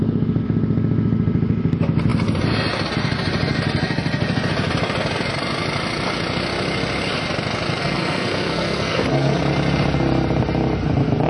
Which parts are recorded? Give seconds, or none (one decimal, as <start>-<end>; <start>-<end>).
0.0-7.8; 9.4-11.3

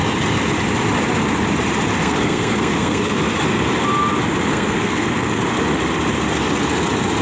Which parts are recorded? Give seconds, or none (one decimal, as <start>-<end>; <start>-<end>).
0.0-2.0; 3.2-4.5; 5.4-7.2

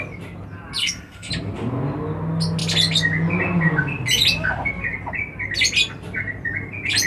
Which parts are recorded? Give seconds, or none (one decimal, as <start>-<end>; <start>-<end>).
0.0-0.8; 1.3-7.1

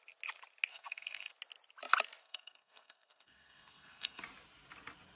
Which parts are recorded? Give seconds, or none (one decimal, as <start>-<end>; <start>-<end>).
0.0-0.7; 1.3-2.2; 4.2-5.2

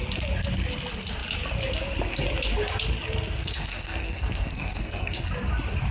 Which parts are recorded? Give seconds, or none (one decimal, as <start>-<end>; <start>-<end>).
0.0-3.4; 5.2-5.9

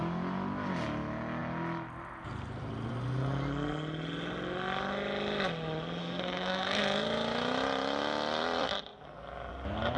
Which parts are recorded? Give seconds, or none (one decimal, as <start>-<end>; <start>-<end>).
0.0-6.0; 6.8-10.0